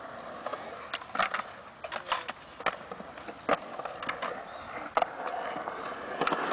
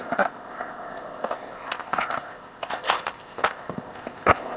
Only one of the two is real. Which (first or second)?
first